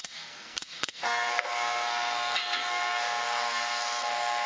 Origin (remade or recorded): remade